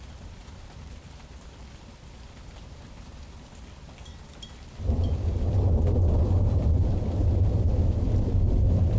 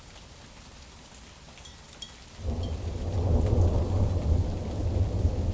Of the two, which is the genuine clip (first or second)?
second